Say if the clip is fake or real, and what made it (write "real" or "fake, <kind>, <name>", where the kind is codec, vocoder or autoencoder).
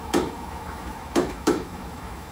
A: fake, autoencoder, DAC-VAE